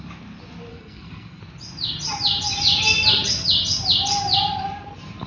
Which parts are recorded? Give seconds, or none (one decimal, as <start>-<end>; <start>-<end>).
0.0-0.7; 1.4-5.3